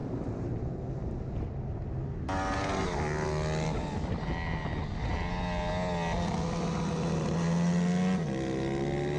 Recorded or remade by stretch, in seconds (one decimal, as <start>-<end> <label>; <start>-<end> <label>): 0.0-1.2 remade; 1.2-9.2 recorded